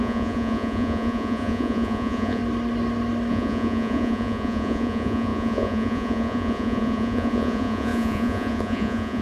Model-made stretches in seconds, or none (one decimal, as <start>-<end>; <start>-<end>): 0.0-2.4; 3.3-9.2